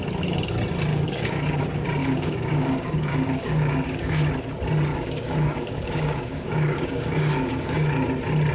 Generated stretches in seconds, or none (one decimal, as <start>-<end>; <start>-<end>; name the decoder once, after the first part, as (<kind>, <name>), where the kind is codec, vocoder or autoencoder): 0.9-1.6 (codec, DAC); 2.0-4.3; 4.9-7.9